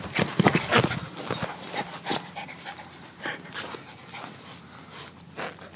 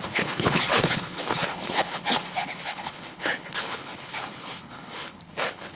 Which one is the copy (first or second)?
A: second